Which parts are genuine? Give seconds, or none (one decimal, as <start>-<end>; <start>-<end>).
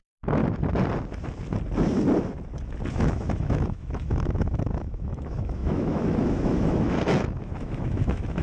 0.4-2.9